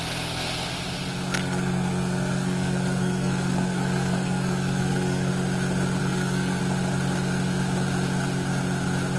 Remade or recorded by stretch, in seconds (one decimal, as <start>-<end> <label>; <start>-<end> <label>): 0.0-1.4 recorded; 1.4-5.3 remade; 5.3-6.0 recorded; 6.0-6.6 remade; 6.6-9.2 recorded